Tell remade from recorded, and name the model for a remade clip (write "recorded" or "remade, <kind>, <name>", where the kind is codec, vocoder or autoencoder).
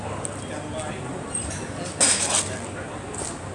recorded